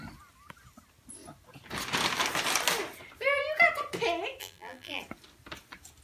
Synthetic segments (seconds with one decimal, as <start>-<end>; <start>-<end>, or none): 4.4-5.0